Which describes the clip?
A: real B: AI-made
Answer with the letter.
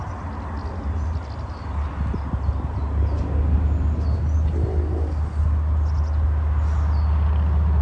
A